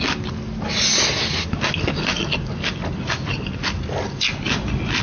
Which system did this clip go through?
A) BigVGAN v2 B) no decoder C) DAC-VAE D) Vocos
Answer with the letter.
B